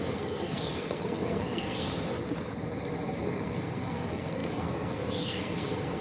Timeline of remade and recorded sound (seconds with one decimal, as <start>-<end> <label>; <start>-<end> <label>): 0.0-1.9 remade; 1.9-3.2 recorded; 3.2-6.0 remade